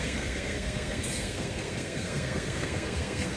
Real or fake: fake